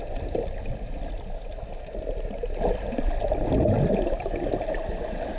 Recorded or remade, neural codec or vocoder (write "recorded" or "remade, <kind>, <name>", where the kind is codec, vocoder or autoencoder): recorded